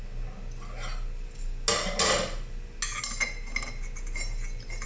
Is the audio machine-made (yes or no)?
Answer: no